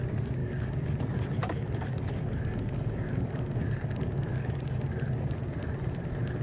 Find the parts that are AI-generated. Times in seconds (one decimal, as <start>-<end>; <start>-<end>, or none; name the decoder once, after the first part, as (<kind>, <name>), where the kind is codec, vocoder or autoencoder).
0.4-0.9 (codec, DAC); 1.4-5.2